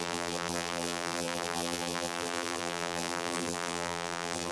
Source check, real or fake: fake